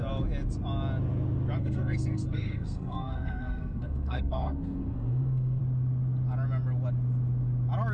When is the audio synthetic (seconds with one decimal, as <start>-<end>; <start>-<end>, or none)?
1.6-5.6